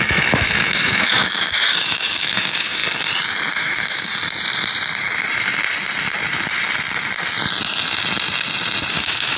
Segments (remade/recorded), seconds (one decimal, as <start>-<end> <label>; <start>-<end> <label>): 0.0-2.8 remade; 2.8-3.5 recorded; 3.5-4.1 remade; 4.1-8.9 recorded; 8.9-9.4 remade